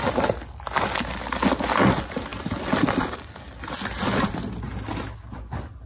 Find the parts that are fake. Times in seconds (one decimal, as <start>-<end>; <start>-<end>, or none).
none